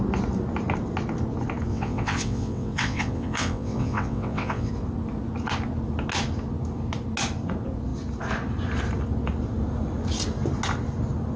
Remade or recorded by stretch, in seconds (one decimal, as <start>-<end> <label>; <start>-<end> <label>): 0.0-1.7 recorded; 1.7-4.7 remade; 4.7-11.4 recorded